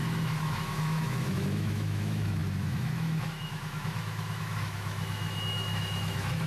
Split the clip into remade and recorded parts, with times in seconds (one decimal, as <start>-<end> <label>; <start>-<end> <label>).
0.0-6.5 remade